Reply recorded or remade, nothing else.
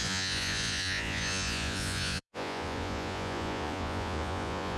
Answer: remade